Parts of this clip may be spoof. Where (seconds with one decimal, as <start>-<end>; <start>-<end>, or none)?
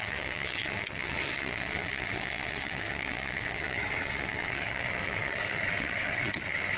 0.0-6.8